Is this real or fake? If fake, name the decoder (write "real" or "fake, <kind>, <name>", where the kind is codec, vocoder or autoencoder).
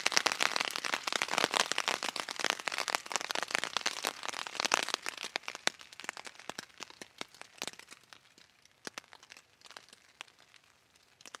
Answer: real